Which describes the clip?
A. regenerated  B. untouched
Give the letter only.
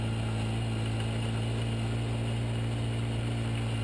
B